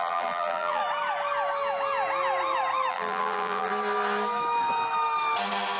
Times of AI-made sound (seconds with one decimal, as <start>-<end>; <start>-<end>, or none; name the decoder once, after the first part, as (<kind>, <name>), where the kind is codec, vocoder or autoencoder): 0.0-0.8 (vocoder, BigVGAN v2); 2.9-3.7